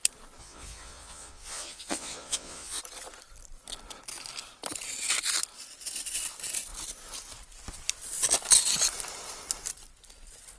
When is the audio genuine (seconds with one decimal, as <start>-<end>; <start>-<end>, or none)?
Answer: 0.0-0.4; 2.8-10.6